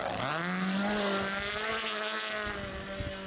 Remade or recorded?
recorded